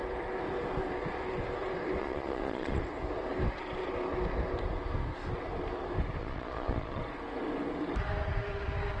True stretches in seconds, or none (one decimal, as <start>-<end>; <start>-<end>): 0.0-2.0; 2.8-6.2; 7.0-9.0